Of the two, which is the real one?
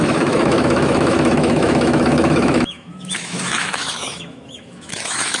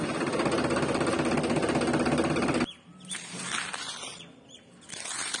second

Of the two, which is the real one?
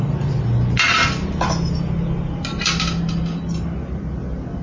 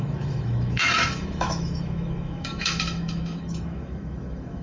first